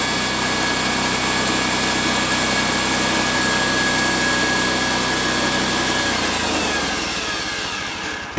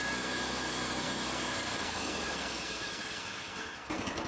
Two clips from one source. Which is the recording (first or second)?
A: first